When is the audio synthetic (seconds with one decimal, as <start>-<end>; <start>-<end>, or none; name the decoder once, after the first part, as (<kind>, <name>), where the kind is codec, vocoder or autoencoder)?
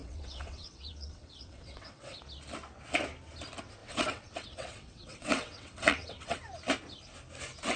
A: 0.0-2.2 (vocoder, WaveNeXt); 3.8-6.4